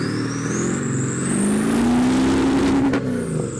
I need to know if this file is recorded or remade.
recorded